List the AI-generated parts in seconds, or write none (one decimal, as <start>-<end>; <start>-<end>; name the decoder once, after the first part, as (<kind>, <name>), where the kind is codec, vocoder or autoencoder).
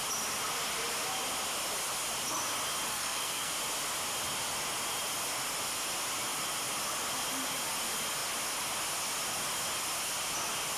2.9-3.5 (codec, SNAC)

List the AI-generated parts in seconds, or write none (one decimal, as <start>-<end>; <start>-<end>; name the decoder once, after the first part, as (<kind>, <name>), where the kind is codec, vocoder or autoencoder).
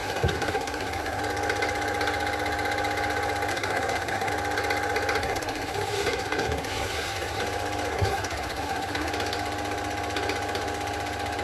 0.0-1.2 (codec, SNAC); 3.5-4.3; 5.2-7.4; 7.9-9.1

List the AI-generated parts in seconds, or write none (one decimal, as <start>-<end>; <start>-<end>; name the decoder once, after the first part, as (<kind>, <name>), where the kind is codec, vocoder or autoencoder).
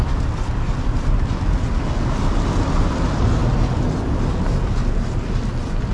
none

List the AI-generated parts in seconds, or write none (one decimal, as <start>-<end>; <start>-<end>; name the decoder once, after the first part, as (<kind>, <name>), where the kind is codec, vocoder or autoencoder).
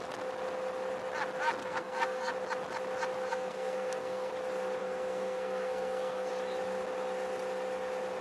1.6-2.3 (codec, SNAC); 3.3-4.3; 4.8-6.3